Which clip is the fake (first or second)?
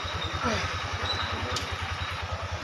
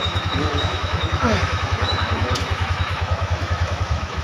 second